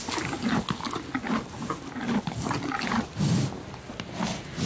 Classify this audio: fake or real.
real